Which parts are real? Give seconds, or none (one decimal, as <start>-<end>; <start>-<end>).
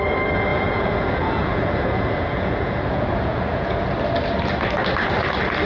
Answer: 0.0-0.5; 3.9-5.7